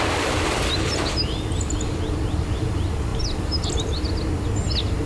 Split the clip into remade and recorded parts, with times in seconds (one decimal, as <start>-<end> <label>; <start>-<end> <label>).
0.0-5.1 recorded